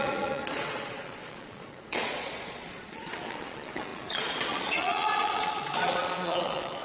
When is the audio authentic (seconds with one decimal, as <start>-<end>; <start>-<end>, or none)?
none